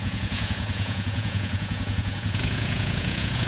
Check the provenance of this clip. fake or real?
fake